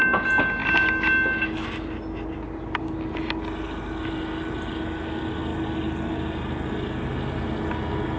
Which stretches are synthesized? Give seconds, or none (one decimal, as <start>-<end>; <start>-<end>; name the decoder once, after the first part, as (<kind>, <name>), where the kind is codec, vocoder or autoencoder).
none